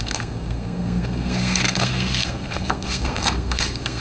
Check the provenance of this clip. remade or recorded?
remade